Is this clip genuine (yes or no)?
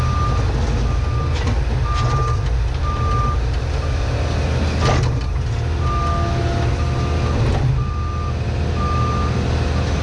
yes